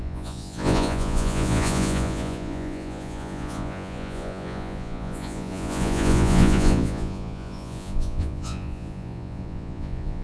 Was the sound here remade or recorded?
remade